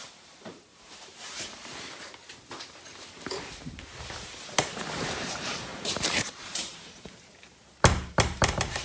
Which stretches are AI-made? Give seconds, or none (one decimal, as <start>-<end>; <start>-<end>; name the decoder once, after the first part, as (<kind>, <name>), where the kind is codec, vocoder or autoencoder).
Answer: 0.0-1.7 (vocoder, BigVGAN v2); 4.5-8.8